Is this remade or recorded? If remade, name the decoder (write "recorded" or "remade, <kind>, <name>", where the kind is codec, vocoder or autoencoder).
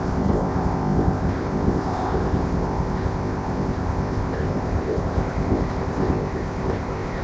remade, codec, ZipCodec